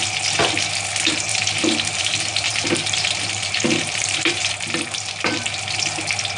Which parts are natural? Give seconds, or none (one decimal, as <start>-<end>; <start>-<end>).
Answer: 0.0-1.3; 4.5-6.4